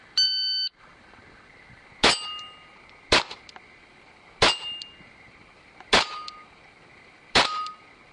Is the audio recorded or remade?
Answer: recorded